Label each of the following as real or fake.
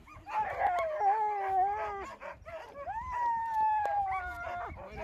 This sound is real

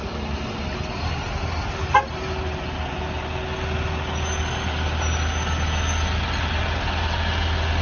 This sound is real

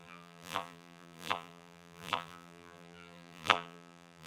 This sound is fake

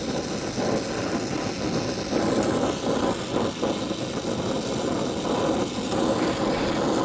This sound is real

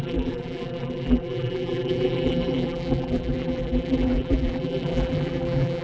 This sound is fake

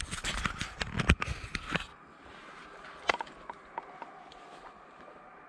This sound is real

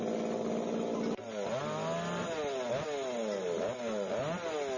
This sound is real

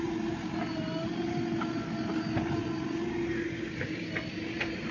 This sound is real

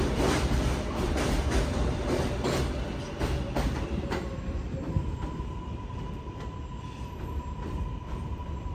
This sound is fake